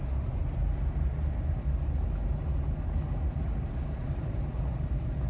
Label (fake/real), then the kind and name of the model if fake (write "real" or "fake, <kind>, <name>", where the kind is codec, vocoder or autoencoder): real